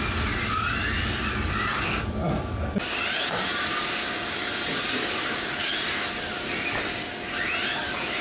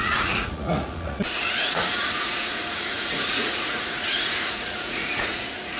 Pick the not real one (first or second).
second